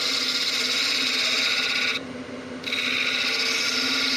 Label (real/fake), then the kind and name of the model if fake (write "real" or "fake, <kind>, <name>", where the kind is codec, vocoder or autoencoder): real